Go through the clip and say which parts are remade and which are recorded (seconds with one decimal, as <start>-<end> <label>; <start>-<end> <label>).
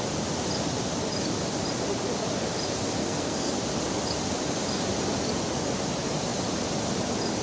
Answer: 0.0-3.0 recorded; 3.0-3.5 remade; 3.5-7.4 recorded